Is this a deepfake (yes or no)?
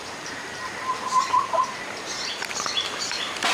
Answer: yes